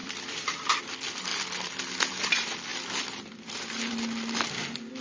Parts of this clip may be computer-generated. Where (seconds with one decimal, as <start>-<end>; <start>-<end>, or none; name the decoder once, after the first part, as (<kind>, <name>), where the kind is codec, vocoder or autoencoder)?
0.0-0.8 (vocoder, BigVGAN v2)